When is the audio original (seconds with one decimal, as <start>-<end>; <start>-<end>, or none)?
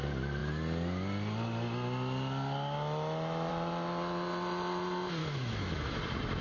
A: 0.0-5.2; 6.0-6.4